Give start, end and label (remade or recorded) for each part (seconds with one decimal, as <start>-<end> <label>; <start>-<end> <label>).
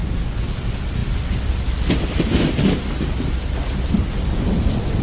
0.0-5.0 recorded